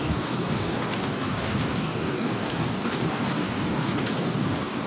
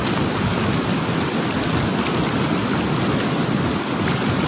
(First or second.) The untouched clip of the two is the second